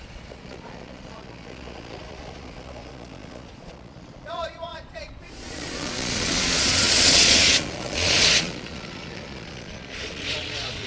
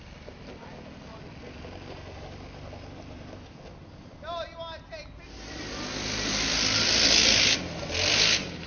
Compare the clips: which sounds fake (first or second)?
first